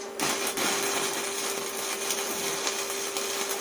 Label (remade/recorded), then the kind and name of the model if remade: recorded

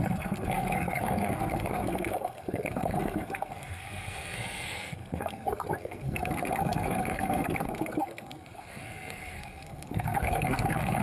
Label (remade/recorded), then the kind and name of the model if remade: remade, codec, SNAC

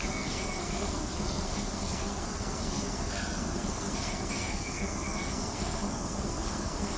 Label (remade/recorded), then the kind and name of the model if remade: remade, codec, SNAC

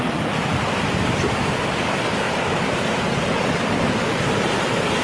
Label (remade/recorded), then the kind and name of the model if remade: recorded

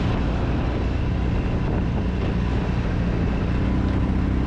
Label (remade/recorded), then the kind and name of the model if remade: recorded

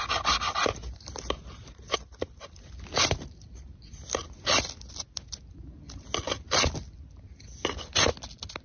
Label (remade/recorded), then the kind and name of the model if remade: recorded